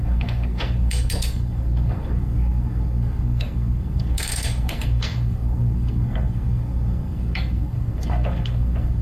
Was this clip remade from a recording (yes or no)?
yes